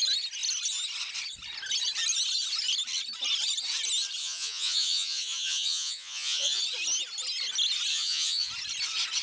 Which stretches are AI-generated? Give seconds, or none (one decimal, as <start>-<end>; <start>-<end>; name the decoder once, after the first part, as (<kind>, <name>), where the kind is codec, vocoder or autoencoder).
4.2-6.6 (vocoder, Vocos); 7.9-8.5